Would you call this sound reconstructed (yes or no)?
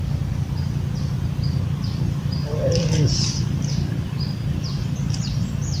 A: no